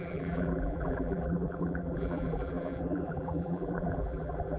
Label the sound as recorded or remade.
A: remade